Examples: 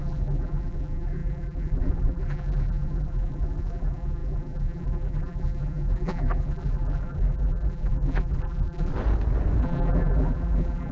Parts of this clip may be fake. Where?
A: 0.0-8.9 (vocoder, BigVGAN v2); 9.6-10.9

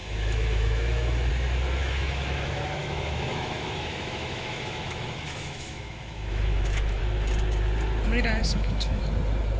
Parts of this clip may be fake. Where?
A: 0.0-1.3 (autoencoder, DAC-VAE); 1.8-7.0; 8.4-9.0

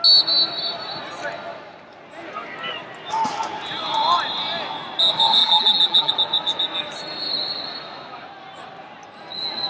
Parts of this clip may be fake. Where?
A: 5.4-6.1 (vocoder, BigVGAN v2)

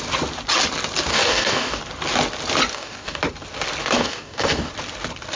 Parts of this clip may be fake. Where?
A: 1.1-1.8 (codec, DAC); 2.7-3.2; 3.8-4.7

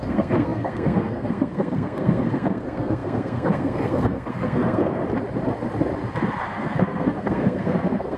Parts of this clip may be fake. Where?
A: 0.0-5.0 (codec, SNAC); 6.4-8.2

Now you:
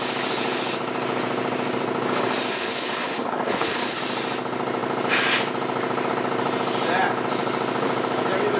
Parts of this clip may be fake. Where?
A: 2.5-4.0 (codec, HILCodec)

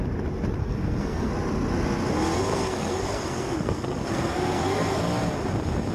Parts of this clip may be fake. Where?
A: 0.6-1.3 (codec, SNAC); 2.5-5.0